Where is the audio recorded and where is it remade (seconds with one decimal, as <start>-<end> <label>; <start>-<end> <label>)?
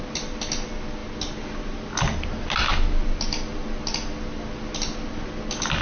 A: 0.0-5.8 recorded